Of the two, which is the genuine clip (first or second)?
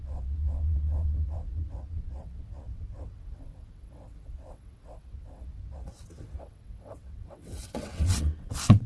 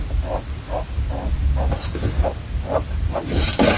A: second